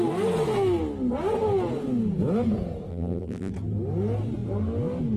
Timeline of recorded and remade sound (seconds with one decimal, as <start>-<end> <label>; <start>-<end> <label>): 0.0-2.9 recorded; 2.9-3.5 remade; 3.5-5.2 recorded